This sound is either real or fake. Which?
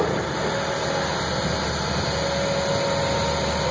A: real